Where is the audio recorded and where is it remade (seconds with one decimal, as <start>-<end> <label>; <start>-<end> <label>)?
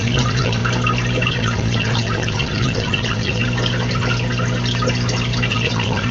0.0-0.6 remade; 0.6-1.3 recorded; 1.3-3.4 remade; 3.4-5.5 recorded; 5.5-6.1 remade